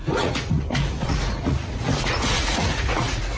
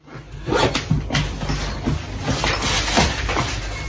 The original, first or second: second